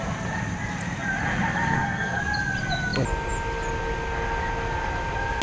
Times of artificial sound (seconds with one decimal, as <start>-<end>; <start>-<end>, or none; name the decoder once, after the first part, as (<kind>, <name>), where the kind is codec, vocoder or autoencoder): 1.7-2.2 (codec, SNAC)